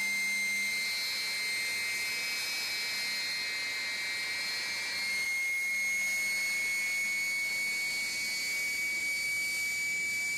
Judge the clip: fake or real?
real